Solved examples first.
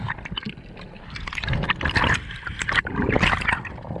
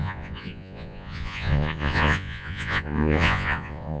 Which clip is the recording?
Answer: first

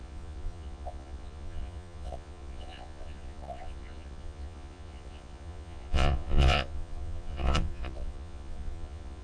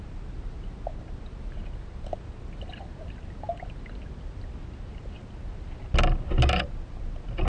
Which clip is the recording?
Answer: second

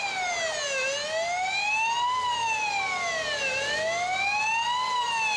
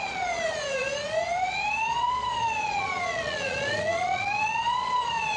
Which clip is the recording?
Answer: first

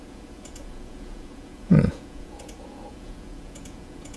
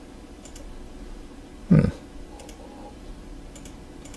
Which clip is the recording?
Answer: second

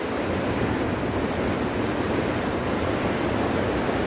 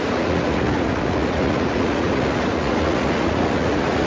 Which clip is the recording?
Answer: first